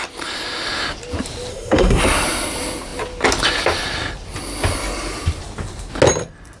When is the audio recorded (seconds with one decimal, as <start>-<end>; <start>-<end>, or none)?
0.0-1.5; 2.0-6.6